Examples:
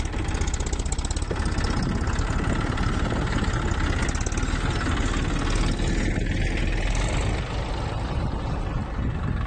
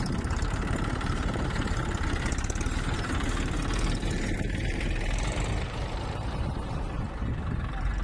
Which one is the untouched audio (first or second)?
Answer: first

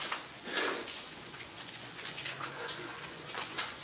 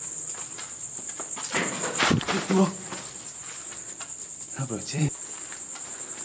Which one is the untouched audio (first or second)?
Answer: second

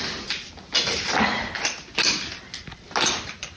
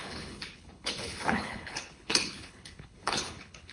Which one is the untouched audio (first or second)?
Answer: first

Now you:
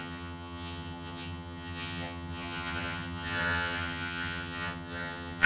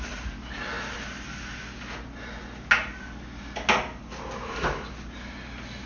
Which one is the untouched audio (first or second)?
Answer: second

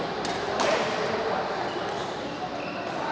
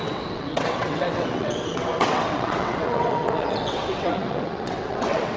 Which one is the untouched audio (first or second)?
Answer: first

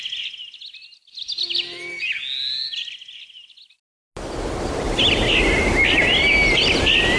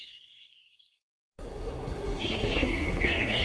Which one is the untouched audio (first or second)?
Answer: first